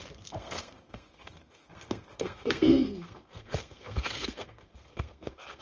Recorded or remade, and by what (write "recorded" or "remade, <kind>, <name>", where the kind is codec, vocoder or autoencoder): remade, codec, SNAC